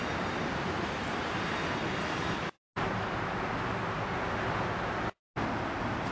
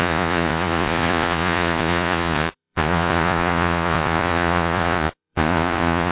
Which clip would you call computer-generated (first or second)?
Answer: second